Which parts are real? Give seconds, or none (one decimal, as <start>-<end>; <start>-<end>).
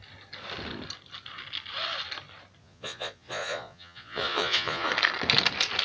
0.0-2.6; 4.9-5.8